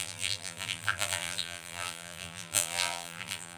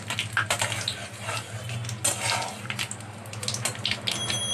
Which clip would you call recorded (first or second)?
second